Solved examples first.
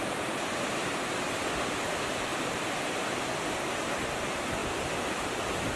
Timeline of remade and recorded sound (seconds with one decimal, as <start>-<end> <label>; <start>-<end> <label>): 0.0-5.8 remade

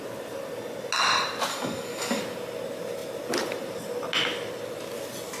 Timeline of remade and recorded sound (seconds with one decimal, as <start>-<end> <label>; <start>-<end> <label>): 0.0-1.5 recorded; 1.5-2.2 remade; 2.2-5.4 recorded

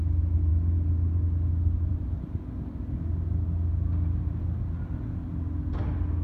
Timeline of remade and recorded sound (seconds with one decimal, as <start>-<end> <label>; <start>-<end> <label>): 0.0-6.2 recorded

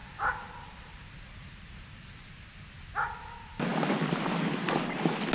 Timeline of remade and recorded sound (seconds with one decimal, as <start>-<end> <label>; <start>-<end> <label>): 0.0-5.3 recorded